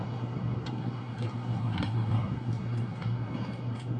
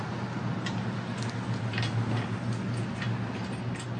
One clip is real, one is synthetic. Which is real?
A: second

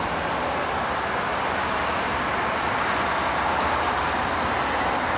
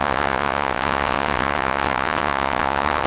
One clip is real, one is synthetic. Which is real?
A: first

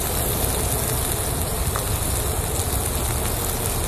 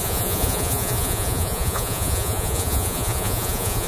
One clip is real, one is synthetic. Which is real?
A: first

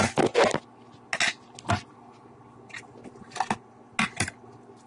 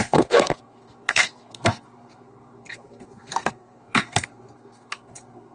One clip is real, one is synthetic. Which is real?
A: first